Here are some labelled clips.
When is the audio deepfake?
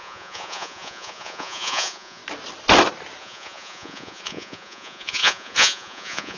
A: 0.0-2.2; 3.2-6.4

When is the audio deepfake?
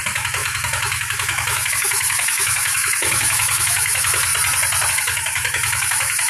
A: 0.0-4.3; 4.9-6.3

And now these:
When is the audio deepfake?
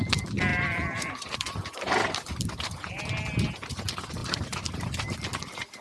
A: 0.5-3.2; 4.2-5.1